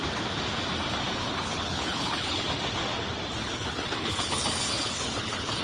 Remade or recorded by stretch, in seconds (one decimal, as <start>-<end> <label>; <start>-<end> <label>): 0.0-1.2 recorded; 1.2-2.4 remade; 2.4-3.4 recorded; 3.4-5.6 remade